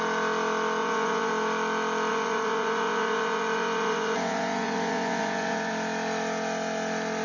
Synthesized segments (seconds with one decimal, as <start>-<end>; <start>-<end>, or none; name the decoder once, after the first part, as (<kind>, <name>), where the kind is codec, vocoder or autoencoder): 0.8-1.3 (vocoder, Vocos); 2.1-5.7